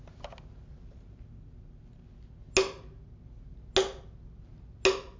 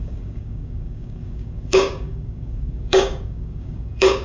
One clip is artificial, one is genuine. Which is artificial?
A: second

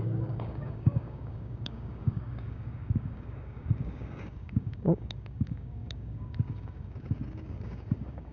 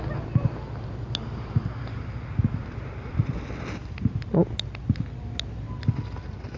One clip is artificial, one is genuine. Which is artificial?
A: first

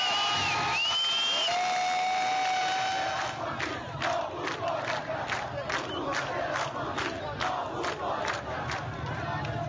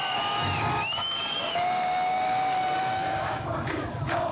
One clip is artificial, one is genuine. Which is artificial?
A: second